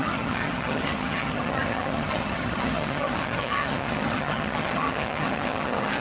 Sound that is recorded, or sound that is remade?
remade